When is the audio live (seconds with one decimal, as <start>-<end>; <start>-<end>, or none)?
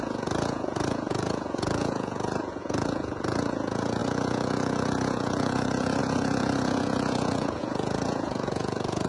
none